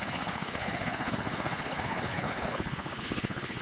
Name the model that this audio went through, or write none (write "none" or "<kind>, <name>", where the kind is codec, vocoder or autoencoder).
codec, HILCodec